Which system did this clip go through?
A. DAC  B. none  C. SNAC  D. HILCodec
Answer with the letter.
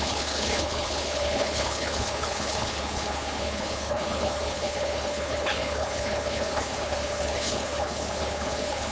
D